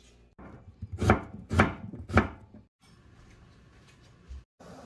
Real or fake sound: real